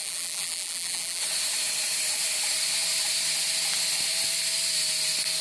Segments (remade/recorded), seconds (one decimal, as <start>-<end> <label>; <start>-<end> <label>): 0.0-1.2 remade; 1.2-5.4 recorded